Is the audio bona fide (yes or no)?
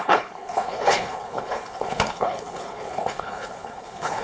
no